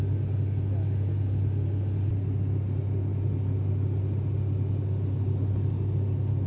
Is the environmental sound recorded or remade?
recorded